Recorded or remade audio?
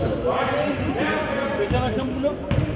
recorded